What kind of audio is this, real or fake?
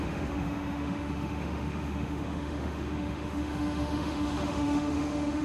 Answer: fake